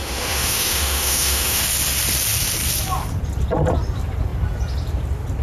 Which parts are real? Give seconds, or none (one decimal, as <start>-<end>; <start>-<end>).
1.6-5.4